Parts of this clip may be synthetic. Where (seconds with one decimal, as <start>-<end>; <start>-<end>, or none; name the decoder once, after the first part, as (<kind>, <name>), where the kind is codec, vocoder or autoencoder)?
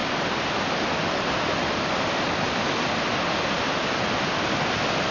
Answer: none